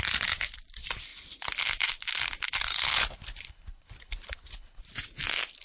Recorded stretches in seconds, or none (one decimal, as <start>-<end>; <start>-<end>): 0.0-2.7; 4.8-5.6